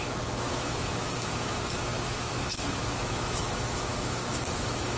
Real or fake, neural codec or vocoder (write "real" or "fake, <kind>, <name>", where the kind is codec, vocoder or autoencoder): fake, autoencoder, DAC-VAE